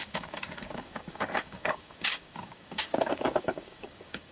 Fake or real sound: fake